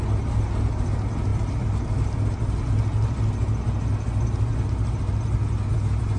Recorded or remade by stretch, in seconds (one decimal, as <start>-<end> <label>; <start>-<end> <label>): 0.0-6.2 recorded